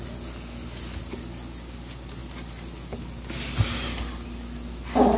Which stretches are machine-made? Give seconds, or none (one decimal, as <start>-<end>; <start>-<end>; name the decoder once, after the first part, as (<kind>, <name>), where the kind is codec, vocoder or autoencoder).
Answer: none